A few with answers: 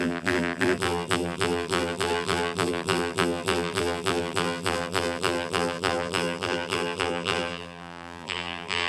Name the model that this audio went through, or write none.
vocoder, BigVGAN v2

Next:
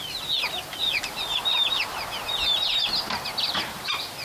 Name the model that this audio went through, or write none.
none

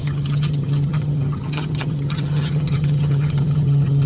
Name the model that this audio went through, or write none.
vocoder, HiFi-GAN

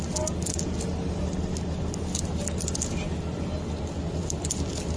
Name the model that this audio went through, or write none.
none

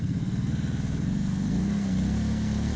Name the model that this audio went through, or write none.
codec, SNAC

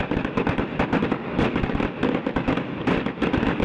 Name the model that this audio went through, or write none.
none